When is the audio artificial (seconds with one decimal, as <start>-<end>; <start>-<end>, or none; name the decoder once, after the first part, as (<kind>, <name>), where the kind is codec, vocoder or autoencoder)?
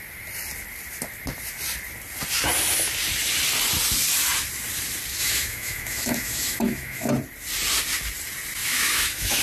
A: 5.2-7.1 (autoencoder, DAC-VAE); 8.6-9.4